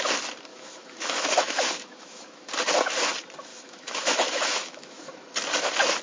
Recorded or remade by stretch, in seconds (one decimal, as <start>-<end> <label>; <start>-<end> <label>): 0.0-0.5 recorded; 0.5-2.5 remade; 2.5-3.5 recorded; 3.5-5.0 remade; 5.0-6.0 recorded